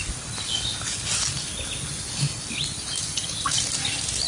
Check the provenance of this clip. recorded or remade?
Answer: recorded